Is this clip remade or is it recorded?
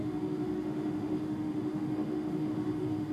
remade